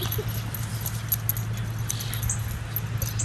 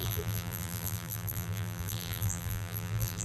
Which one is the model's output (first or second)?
second